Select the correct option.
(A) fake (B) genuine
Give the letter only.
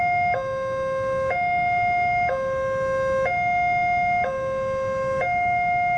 B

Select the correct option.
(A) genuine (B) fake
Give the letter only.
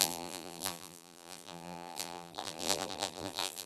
B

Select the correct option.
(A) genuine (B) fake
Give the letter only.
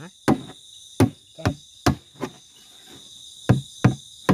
A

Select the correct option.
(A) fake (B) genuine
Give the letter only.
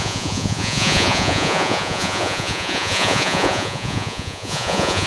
A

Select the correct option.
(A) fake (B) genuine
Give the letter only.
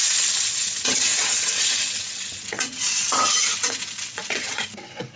A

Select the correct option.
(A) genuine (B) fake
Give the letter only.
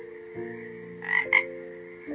A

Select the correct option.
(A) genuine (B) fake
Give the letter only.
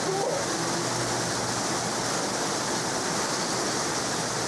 A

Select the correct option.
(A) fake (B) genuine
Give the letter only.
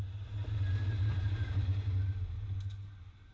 B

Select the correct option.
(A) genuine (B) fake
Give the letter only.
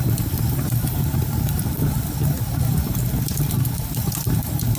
A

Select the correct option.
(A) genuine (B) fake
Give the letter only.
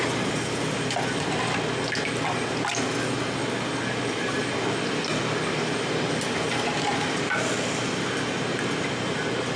A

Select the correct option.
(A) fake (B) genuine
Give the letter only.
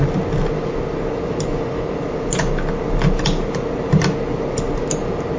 B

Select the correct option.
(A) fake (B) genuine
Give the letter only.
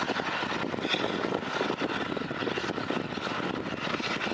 B